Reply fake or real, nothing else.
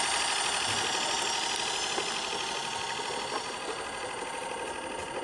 real